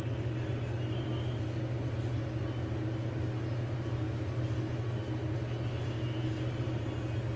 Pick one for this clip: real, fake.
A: real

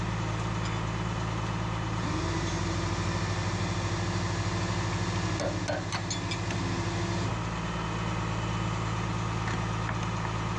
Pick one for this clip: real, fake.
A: real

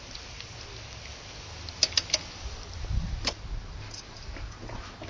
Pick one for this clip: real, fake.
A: real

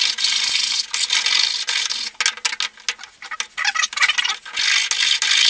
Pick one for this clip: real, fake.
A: real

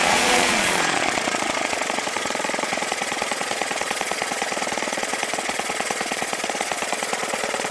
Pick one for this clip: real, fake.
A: fake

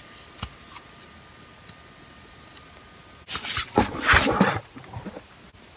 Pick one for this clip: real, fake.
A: real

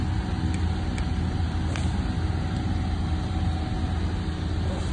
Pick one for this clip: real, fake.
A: real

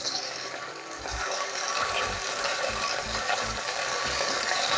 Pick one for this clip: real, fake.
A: fake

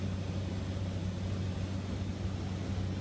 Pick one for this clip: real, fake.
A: real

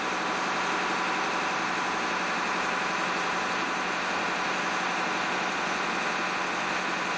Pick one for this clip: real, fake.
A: real